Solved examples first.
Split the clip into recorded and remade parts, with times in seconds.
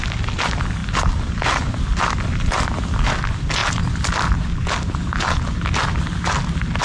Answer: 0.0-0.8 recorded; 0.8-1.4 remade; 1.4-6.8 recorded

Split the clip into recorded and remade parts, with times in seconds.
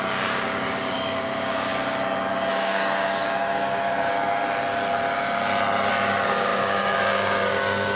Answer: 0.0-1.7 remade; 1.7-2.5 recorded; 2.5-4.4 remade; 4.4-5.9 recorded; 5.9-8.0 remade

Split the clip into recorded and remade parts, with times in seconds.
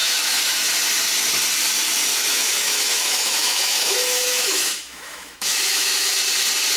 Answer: 0.0-0.7 remade; 0.7-2.1 recorded; 2.1-6.2 remade; 6.2-6.8 recorded